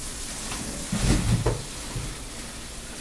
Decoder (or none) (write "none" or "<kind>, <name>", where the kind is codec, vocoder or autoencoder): none